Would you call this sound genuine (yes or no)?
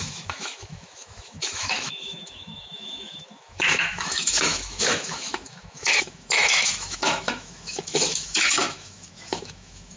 no